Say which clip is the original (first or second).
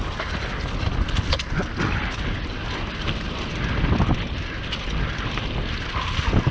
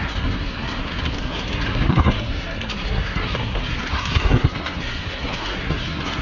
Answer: first